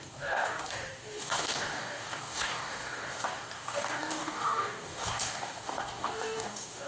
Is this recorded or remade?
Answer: remade